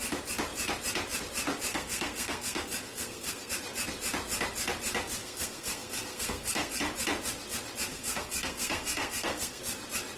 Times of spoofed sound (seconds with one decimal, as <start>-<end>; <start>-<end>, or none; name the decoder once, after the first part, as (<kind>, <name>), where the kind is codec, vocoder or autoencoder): 1.7-3.5 (codec, SNAC); 5.2-6.8; 7.9-9.6